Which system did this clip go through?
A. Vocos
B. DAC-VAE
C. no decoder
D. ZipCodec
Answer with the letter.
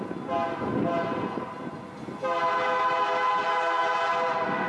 C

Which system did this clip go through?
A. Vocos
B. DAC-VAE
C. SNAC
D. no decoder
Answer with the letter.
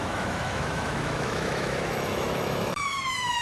B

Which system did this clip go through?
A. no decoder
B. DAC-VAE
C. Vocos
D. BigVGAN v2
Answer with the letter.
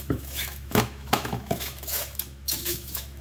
B